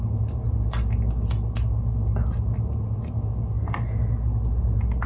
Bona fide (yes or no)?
yes